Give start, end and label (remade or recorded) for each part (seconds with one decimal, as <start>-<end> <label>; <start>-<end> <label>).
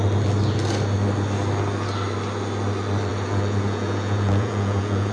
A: 0.0-3.1 recorded; 3.1-5.1 remade